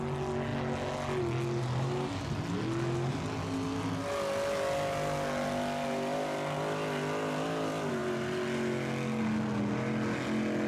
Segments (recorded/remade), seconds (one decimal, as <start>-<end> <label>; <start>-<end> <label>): 0.0-10.7 recorded